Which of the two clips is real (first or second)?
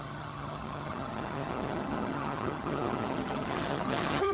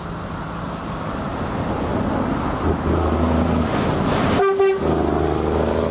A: second